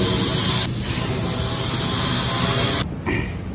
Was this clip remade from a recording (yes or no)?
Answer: no